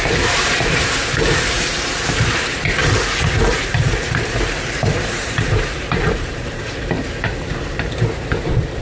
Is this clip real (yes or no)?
no